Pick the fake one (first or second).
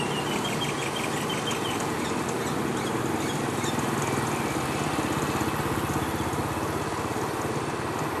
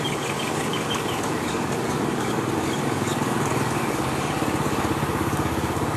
second